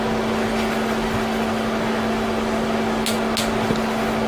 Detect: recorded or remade recorded